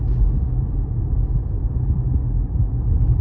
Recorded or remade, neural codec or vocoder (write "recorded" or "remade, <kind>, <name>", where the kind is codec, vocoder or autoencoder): recorded